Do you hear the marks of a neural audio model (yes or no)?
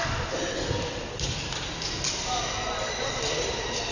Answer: no